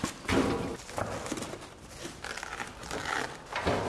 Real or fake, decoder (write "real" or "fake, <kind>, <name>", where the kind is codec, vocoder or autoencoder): real